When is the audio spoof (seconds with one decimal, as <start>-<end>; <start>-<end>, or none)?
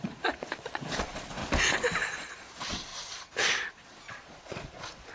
0.0-1.4; 2.0-5.1